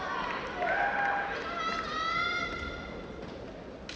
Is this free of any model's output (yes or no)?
yes